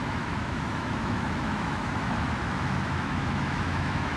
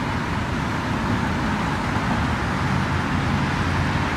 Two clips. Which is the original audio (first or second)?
second